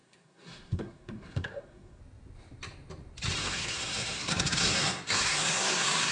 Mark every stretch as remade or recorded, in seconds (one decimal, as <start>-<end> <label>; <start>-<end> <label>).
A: 0.0-2.0 remade; 2.0-3.4 recorded; 3.4-6.1 remade